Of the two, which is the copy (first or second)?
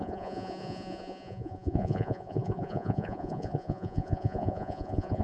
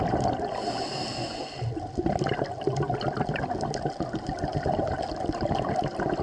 first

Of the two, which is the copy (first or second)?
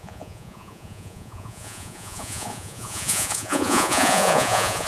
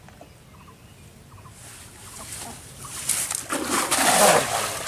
first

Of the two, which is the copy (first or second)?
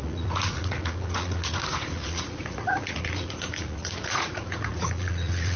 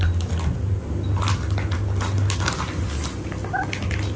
first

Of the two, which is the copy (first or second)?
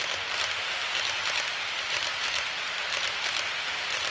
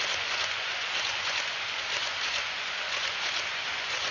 second